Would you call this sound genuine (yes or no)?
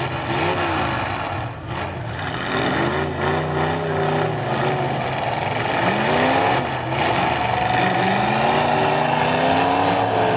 yes